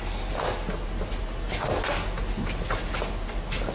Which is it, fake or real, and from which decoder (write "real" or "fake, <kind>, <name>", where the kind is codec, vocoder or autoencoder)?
real